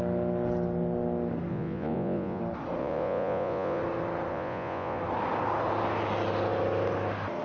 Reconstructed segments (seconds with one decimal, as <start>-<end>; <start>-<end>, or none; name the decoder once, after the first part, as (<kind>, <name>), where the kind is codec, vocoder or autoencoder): 1.5-2.4 (vocoder, Vocos); 2.8-3.8; 4.3-5.0